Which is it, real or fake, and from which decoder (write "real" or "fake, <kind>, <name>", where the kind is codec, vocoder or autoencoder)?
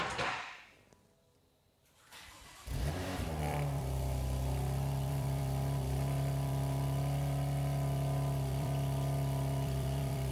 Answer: fake, vocoder, BigVGAN v2